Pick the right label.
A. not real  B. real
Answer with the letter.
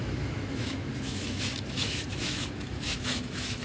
A